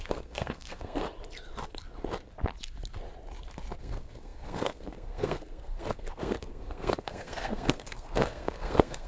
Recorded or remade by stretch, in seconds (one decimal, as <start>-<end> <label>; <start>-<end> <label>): 0.0-1.0 remade; 1.0-3.8 recorded; 3.8-9.1 remade